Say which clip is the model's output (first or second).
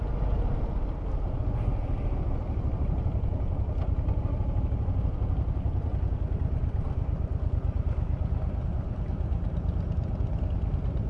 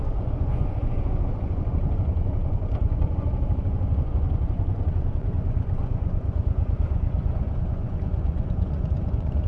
second